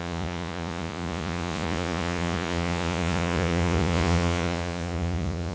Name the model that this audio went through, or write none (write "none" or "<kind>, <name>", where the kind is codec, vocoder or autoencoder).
vocoder, Vocos